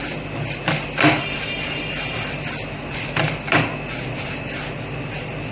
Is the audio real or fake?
real